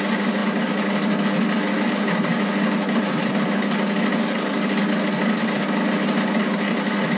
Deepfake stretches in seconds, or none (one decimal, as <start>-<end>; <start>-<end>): none